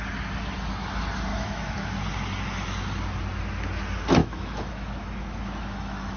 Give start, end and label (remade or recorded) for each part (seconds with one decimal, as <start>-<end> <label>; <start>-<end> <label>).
0.0-1.3 recorded; 1.3-1.9 remade; 1.9-4.2 recorded; 4.2-6.2 remade

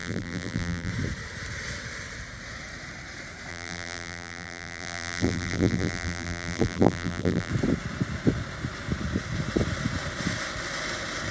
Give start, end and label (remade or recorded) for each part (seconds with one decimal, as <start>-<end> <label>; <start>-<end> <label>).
0.0-0.9 remade; 0.9-3.5 recorded; 3.5-7.5 remade; 7.5-11.3 recorded

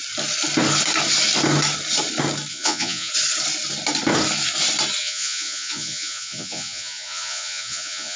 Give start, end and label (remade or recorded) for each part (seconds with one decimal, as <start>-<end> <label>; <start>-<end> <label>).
0.0-2.5 recorded; 2.5-3.1 remade; 3.1-5.0 recorded; 5.0-8.2 remade